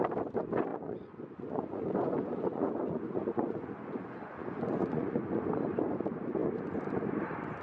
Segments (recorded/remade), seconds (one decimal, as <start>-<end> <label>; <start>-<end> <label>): 0.0-0.7 recorded; 0.7-5.3 remade; 5.3-7.6 recorded